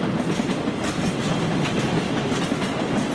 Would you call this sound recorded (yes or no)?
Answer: yes